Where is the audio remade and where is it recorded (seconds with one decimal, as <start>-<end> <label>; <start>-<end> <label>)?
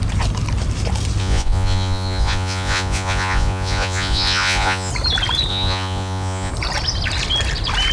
0.0-1.2 recorded; 1.2-4.9 remade; 4.9-5.5 recorded; 5.5-6.5 remade; 6.5-7.9 recorded